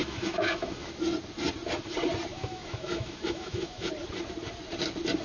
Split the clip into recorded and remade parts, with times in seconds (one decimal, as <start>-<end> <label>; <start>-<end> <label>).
0.0-0.9 remade; 0.9-2.3 recorded; 2.3-3.9 remade; 3.9-5.2 recorded